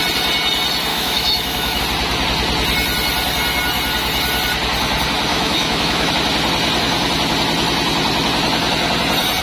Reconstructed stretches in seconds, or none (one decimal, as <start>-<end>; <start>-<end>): 0.9-1.8; 5.3-6.1